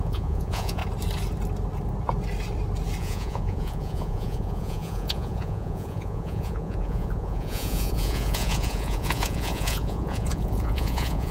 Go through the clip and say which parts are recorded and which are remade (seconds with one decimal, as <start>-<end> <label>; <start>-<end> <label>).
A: 0.0-0.8 remade; 0.8-3.0 recorded; 3.0-11.3 remade